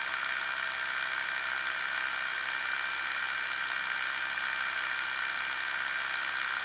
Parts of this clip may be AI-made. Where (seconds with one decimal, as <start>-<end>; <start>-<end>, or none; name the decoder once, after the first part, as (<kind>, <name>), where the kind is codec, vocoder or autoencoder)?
none